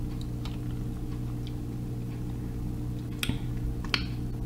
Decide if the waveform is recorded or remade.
recorded